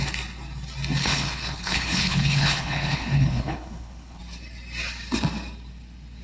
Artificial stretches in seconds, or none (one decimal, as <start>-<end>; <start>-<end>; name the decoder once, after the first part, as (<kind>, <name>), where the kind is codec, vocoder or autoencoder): 1.0-4.2 (codec, HILCodec)